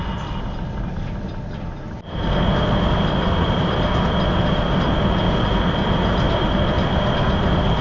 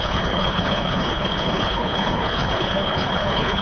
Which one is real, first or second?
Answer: first